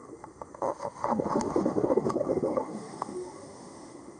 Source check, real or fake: fake